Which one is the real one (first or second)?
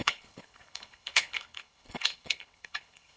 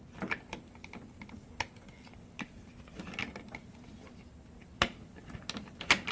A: second